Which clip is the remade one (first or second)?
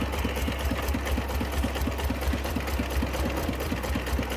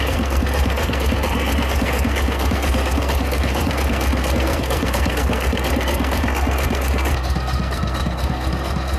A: second